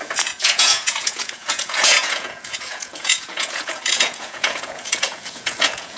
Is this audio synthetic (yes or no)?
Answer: yes